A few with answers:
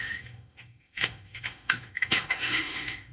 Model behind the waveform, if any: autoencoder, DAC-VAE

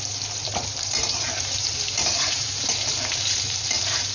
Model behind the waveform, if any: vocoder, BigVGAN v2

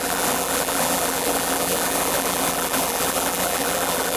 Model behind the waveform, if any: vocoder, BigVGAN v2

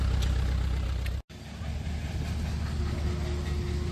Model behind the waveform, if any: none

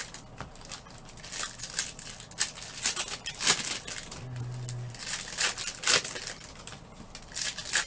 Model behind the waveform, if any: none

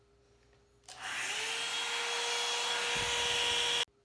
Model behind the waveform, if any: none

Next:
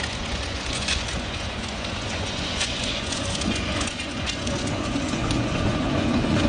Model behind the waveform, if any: vocoder, Vocos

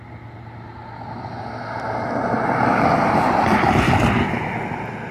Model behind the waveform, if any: none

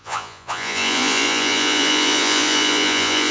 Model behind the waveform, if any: vocoder, Vocos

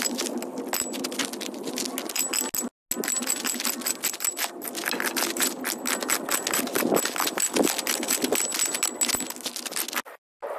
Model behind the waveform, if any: none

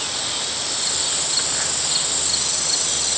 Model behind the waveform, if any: none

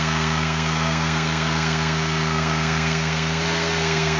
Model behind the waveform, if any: codec, SNAC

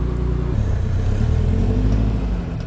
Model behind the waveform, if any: none